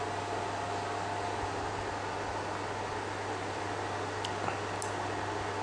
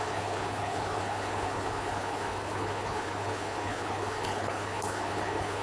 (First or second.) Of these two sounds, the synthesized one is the second